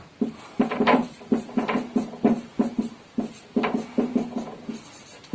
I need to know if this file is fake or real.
fake